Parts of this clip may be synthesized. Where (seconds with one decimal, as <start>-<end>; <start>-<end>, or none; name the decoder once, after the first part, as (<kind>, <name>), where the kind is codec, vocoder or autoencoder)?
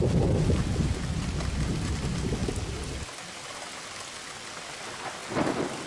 none